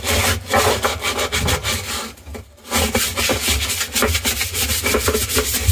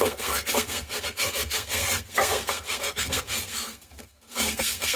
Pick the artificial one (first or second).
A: second